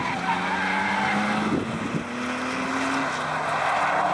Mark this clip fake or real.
real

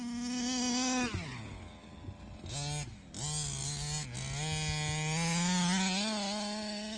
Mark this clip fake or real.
real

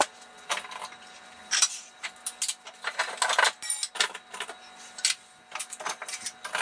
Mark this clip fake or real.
real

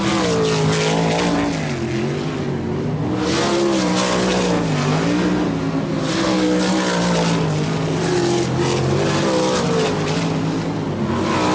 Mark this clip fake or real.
real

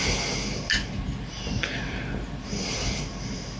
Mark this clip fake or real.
real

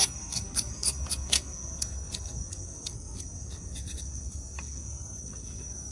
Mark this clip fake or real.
fake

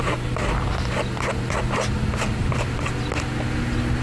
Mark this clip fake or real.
real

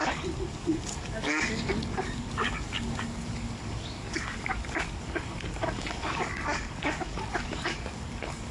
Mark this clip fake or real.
fake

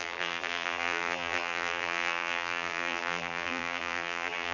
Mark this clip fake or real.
fake